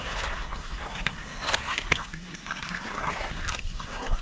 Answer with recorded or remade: remade